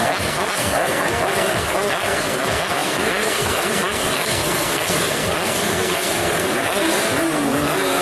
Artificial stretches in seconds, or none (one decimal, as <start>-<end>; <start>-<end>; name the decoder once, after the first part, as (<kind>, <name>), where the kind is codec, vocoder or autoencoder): 0.0-8.0 (codec, SNAC)